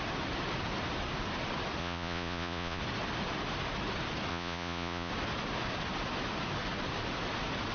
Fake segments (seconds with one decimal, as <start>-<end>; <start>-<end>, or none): 1.8-2.8; 4.3-5.1